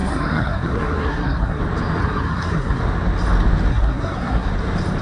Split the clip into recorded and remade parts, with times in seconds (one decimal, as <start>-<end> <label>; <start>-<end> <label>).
0.0-1.6 remade; 1.6-2.0 recorded; 2.0-2.8 remade; 2.8-3.7 recorded; 3.7-4.5 remade; 4.5-5.0 recorded